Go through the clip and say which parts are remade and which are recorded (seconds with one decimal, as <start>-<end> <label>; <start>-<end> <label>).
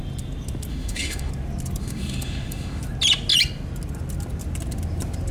0.0-0.7 recorded; 0.7-1.3 remade; 1.3-1.8 recorded; 1.8-2.8 remade; 2.8-5.3 recorded